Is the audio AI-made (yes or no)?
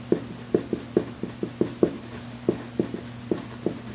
no